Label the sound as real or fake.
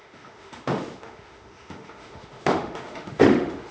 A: fake